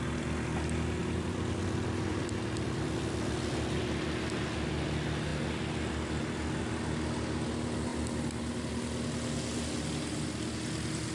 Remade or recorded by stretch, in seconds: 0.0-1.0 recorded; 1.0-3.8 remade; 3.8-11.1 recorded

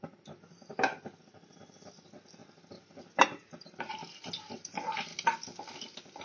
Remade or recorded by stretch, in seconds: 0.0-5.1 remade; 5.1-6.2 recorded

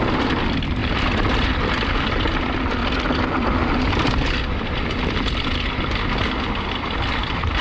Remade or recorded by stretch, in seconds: 0.0-0.8 recorded; 0.8-1.6 remade; 1.6-2.8 recorded; 2.8-5.8 remade; 5.8-7.6 recorded